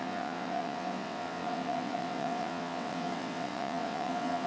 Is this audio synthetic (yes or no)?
yes